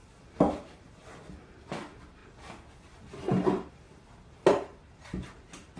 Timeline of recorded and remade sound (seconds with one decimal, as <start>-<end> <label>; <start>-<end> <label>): 0.0-5.8 recorded